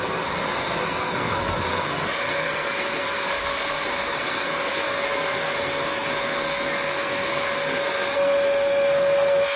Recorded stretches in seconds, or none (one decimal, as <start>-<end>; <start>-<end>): none